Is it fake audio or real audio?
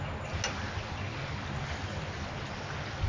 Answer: real